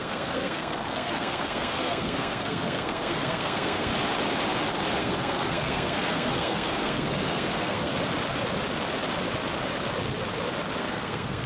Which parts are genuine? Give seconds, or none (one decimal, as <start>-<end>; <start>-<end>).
3.9-5.0; 7.9-10.8

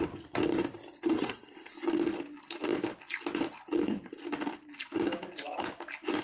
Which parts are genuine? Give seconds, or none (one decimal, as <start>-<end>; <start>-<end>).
0.0-1.1; 1.7-6.2